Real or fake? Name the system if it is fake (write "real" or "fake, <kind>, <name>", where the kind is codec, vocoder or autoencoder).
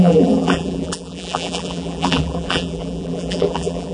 fake, vocoder, BigVGAN v2